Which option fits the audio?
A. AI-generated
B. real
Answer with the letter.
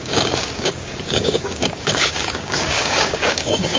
A